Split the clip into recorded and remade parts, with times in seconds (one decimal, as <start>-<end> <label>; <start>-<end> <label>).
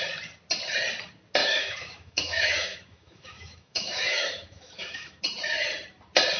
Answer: 0.0-1.4 recorded; 1.4-5.2 remade; 5.2-6.4 recorded